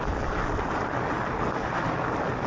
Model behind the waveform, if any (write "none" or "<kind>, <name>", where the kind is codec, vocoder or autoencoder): none